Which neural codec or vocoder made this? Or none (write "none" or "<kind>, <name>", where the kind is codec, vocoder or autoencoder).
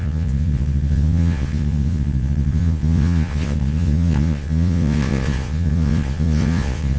vocoder, Vocos